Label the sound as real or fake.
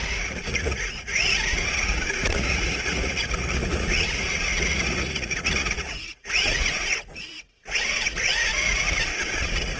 fake